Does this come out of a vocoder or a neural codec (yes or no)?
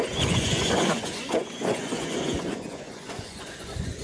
yes